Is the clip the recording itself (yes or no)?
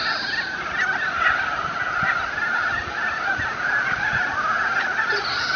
yes